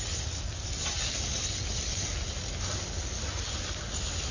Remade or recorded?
recorded